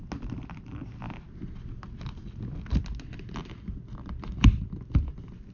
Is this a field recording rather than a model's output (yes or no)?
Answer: yes